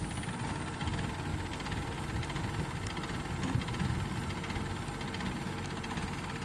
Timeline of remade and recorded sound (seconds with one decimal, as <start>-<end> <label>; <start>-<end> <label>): 0.0-1.3 recorded; 1.3-2.4 remade; 2.4-6.4 recorded